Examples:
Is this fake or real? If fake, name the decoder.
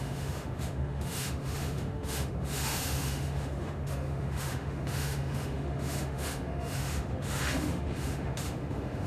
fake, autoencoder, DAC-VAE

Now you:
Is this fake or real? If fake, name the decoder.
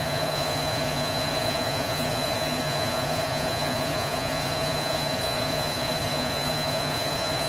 fake, vocoder, Vocos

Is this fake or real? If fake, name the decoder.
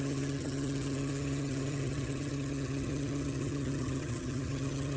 fake, vocoder, HiFi-GAN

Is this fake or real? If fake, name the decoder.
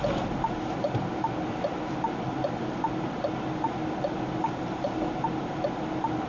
real